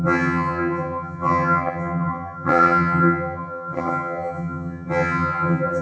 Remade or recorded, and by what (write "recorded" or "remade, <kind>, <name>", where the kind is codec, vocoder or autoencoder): remade, vocoder, HiFi-GAN